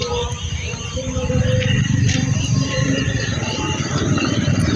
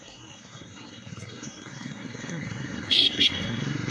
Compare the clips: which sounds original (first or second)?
first